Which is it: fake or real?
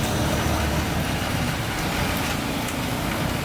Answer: fake